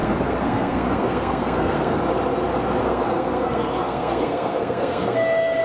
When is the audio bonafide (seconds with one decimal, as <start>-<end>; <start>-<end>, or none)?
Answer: 2.0-2.8